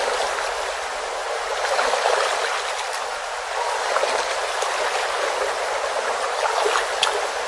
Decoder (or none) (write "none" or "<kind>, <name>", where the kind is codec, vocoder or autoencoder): none